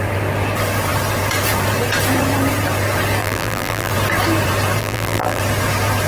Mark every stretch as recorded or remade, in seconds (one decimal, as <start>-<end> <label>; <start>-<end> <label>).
0.0-3.2 recorded; 3.2-3.9 remade; 3.9-4.8 recorded; 4.8-5.4 remade; 5.4-6.1 recorded